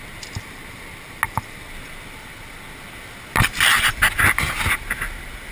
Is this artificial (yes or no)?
no